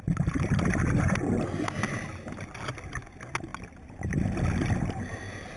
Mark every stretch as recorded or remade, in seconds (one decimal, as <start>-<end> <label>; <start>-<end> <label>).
0.0-5.6 recorded